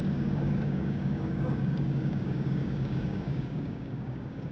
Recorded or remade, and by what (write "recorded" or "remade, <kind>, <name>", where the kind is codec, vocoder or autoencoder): remade, codec, DAC